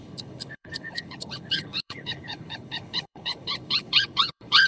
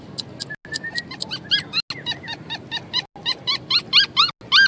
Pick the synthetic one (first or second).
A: first